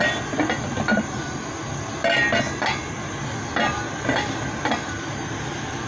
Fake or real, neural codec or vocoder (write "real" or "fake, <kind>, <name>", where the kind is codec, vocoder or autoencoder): real